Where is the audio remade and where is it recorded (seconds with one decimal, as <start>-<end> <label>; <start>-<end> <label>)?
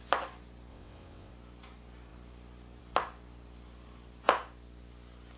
0.0-0.7 recorded; 0.7-1.3 remade; 1.3-5.4 recorded